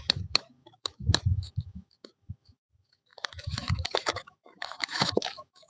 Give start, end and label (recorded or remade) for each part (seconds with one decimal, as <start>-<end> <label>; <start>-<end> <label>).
0.0-5.7 remade

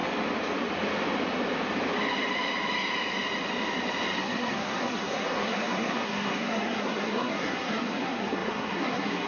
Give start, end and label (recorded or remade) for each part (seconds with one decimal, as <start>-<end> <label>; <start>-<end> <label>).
0.0-4.2 recorded; 4.2-9.3 remade

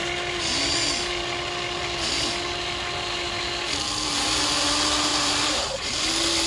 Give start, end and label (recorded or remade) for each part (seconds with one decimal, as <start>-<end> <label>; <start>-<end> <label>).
0.0-5.1 recorded; 5.1-6.1 remade; 6.1-6.5 recorded

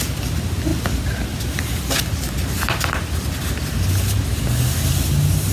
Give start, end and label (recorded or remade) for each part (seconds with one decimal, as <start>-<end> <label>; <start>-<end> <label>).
0.0-5.5 recorded